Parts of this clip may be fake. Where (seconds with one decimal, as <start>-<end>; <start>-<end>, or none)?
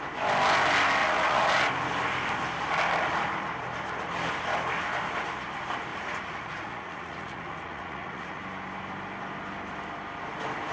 1.0-1.7; 5.9-8.4